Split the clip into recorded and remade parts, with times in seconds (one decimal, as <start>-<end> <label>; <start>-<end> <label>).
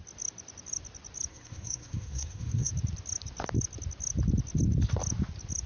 0.0-1.3 recorded; 1.3-2.7 remade; 2.7-5.7 recorded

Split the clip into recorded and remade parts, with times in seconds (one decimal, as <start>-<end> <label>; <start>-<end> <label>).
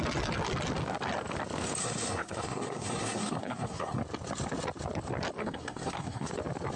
0.0-1.8 recorded; 1.8-4.0 remade; 4.0-5.4 recorded; 5.4-6.3 remade; 6.3-6.8 recorded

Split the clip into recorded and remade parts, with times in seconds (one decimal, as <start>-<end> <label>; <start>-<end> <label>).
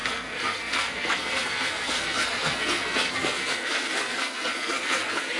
0.0-5.4 remade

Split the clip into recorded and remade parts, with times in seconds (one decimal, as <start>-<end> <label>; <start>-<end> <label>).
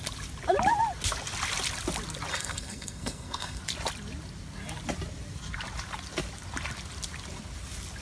0.0-2.3 recorded; 2.3-3.6 remade; 3.6-8.0 recorded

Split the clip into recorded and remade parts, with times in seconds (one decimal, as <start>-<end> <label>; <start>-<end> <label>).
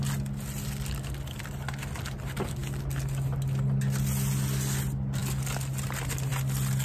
0.0-6.8 recorded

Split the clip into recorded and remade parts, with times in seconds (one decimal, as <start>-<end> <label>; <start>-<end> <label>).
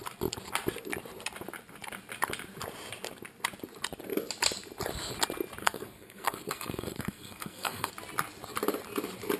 0.0-5.6 recorded; 5.6-7.9 remade; 7.9-9.4 recorded